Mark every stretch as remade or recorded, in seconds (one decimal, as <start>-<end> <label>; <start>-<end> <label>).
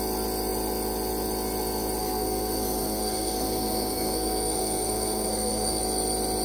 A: 0.0-2.0 recorded; 2.0-5.8 remade; 5.8-6.4 recorded